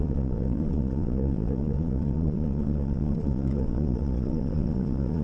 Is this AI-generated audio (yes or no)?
yes